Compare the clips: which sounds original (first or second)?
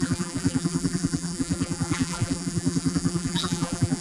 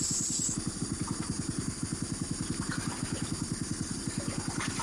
second